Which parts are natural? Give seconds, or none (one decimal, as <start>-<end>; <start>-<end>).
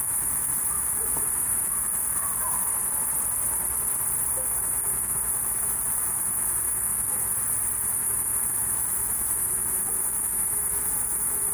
2.7-4.3; 7.3-7.9